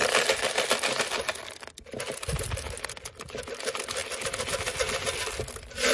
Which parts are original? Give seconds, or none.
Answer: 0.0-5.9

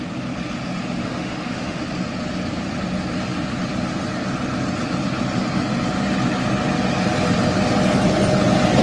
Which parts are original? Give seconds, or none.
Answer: 0.0-1.0; 1.8-8.8

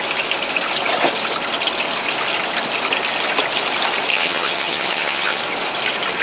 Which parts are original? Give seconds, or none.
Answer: 0.0-4.1; 5.4-6.2

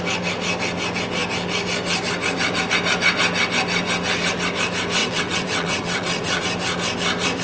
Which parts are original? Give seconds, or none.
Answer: 0.0-5.0; 6.4-7.4

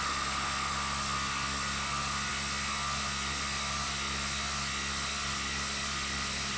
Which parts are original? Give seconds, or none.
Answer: 0.0-6.6